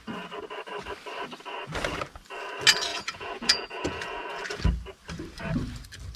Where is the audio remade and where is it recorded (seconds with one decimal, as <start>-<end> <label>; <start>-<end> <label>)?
0.0-2.9 recorded; 2.9-4.6 remade; 4.6-6.2 recorded